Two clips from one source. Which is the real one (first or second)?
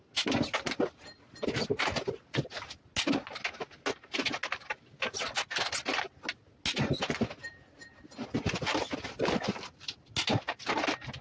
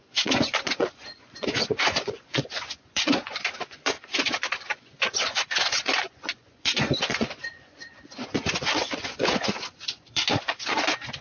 first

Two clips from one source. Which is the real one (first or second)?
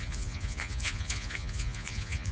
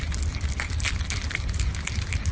second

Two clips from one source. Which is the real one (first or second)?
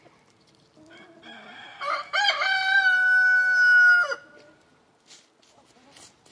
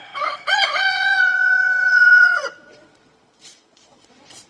first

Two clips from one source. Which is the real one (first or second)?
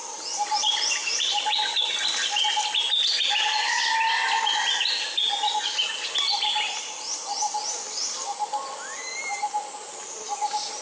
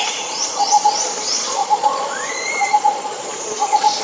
first